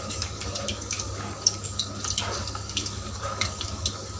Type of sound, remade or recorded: remade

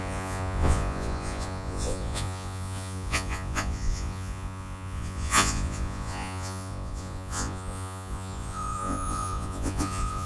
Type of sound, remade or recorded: remade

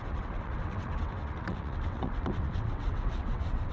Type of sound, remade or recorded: remade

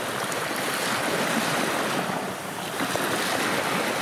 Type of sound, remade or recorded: recorded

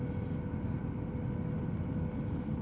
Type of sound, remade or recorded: recorded